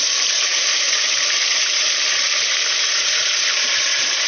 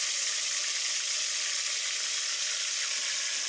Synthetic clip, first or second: first